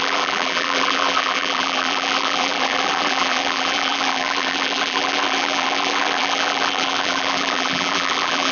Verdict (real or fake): fake